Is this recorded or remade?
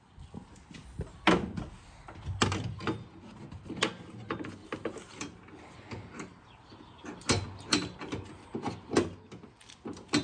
recorded